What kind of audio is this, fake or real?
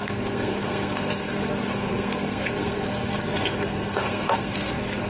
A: fake